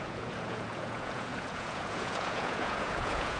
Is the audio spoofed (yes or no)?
yes